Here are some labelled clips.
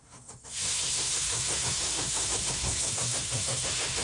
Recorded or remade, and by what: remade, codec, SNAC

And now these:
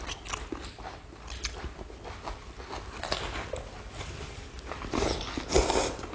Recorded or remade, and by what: recorded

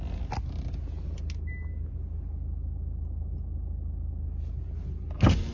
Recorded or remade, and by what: recorded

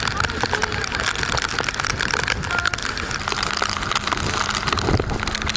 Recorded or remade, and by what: recorded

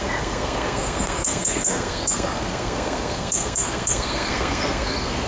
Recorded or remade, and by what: remade, codec, SNAC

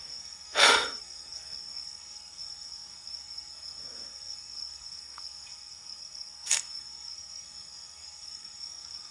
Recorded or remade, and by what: remade, codec, SNAC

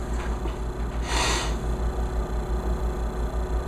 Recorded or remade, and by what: recorded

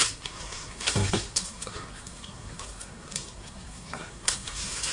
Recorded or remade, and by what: remade, codec, SNAC